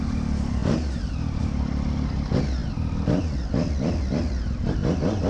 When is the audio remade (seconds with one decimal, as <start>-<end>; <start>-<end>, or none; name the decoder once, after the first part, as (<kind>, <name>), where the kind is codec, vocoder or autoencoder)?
none